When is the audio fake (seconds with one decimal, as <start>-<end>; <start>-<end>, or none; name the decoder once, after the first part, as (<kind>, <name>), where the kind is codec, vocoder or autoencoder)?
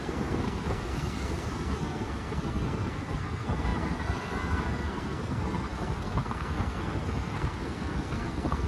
0.0-8.7 (codec, SNAC)